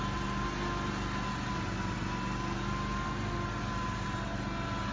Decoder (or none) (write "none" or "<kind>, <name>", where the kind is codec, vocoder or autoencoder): none